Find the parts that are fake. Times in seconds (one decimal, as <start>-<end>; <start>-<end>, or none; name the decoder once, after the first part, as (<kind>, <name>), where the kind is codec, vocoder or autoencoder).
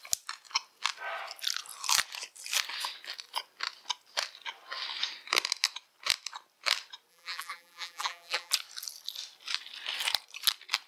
7.1-8.5 (vocoder, BigVGAN v2)